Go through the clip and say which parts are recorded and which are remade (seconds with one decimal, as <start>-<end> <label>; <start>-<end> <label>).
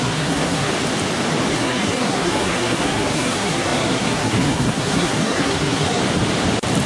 0.0-0.7 remade; 0.7-1.5 recorded; 1.5-6.0 remade; 6.0-6.9 recorded